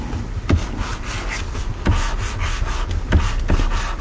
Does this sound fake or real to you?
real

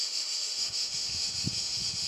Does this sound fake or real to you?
fake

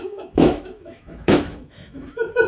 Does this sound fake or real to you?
fake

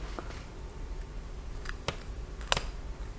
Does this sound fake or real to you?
real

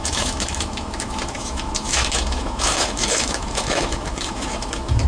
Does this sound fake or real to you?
fake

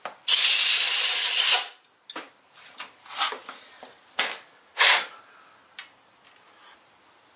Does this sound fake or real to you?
real